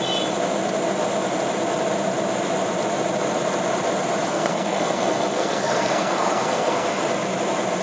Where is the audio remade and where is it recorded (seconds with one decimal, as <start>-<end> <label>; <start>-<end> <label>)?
0.0-4.3 recorded; 4.3-7.0 remade; 7.0-7.8 recorded

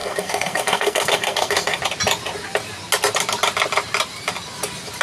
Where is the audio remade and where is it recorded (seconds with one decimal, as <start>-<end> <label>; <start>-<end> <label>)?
0.0-1.8 remade; 1.8-5.0 recorded

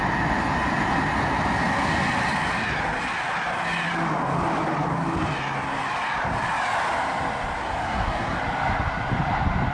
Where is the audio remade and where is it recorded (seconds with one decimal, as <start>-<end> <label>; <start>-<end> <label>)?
0.0-7.6 recorded; 7.6-8.4 remade; 8.4-9.7 recorded

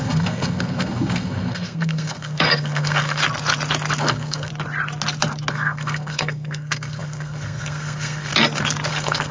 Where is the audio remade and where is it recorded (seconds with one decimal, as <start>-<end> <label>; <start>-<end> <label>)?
0.0-3.2 remade; 3.2-4.0 recorded; 4.0-4.5 remade; 4.5-5.5 recorded; 5.5-8.3 remade; 8.3-8.9 recorded; 8.9-9.3 remade